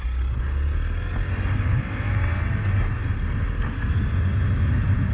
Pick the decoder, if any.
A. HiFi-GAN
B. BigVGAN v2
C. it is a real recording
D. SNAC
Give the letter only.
C